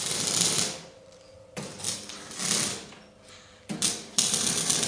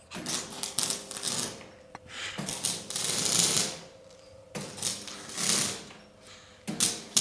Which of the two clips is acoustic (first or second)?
second